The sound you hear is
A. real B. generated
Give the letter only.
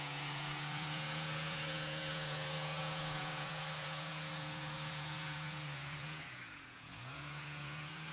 B